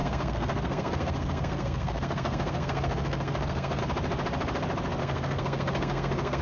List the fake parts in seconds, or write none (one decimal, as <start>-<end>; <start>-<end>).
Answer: 0.0-3.8; 5.0-6.4